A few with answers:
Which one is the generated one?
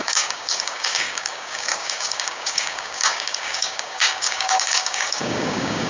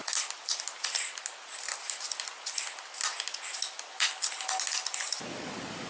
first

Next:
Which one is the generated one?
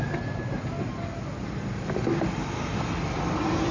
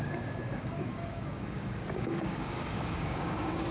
second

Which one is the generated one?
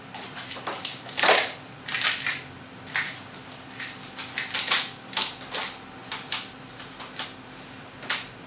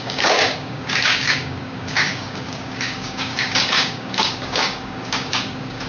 second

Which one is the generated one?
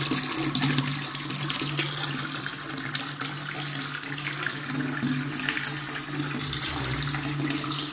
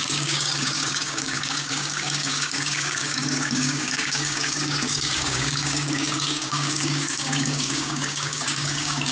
second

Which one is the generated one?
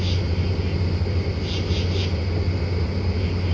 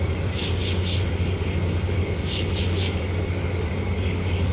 second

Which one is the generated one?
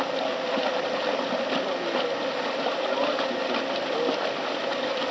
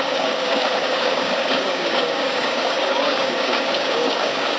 second